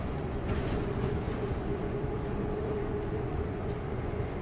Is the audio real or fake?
fake